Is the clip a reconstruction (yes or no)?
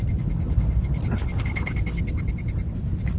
no